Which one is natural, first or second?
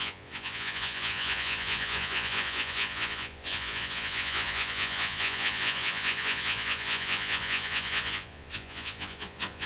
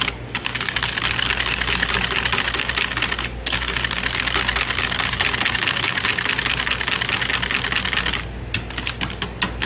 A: second